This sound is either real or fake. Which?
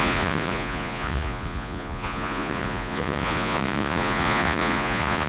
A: fake